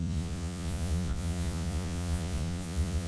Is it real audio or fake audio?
fake